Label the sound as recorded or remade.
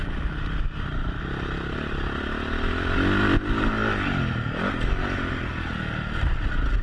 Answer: recorded